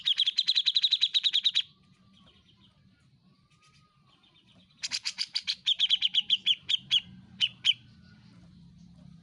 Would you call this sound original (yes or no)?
no